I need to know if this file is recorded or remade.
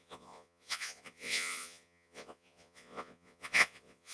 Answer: remade